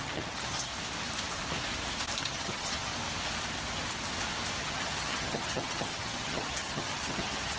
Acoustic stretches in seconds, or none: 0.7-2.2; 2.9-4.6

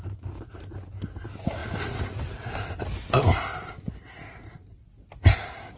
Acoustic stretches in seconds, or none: 0.0-5.8

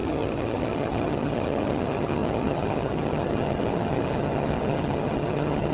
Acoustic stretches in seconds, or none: none

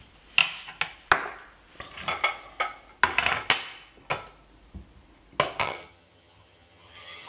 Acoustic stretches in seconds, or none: 0.0-5.6

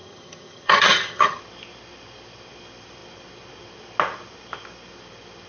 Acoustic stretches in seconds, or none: 1.4-5.5

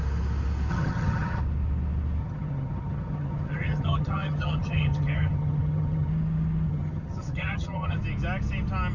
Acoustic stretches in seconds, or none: 0.0-0.7; 1.4-2.2; 6.1-6.7; 8.0-8.9

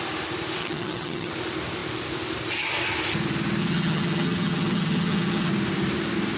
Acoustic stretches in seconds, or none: 0.0-0.6; 1.3-3.6; 5.5-6.4

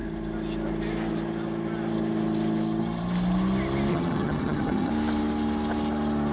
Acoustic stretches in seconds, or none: 0.0-3.9; 4.9-6.3